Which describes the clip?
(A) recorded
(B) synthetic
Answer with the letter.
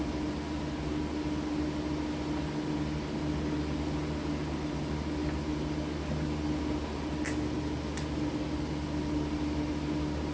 A